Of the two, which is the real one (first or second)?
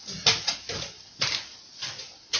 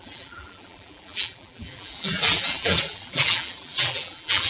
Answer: first